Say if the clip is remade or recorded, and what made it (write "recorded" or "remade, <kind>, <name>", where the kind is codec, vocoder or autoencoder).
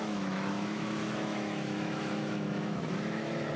remade, autoencoder, DAC-VAE